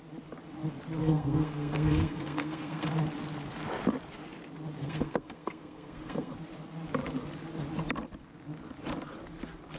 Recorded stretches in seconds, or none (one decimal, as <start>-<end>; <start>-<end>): 0.0-1.0; 2.9-4.8; 6.3-9.8